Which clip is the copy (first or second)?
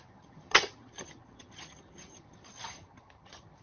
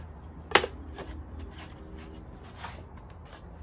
first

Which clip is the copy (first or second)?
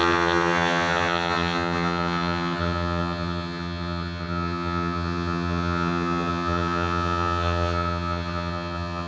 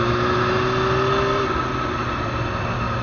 first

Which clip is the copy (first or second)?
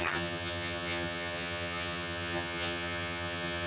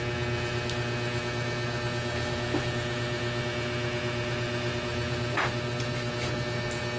first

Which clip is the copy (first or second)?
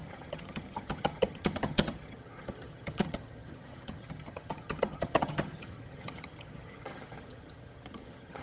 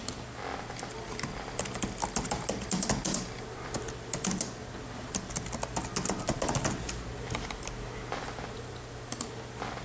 first